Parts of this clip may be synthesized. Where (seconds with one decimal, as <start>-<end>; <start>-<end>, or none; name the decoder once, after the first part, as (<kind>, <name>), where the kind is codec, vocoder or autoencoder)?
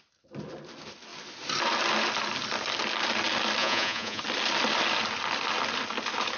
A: 3.6-4.2 (vocoder, Vocos)